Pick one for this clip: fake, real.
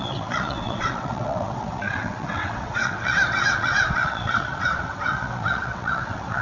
fake